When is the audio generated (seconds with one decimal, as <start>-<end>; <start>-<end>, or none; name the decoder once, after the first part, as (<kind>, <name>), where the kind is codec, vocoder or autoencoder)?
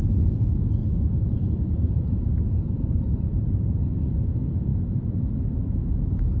0.8-3.9 (vocoder, BigVGAN v2)